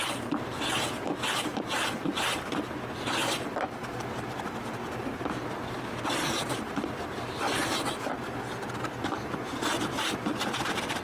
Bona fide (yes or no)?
no